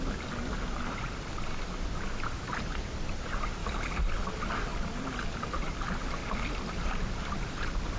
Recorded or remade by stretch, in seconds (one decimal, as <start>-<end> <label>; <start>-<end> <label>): 0.0-3.6 recorded; 3.6-4.3 remade; 4.3-4.7 recorded; 4.7-5.8 remade; 5.8-6.2 recorded; 6.2-6.8 remade; 6.8-8.0 recorded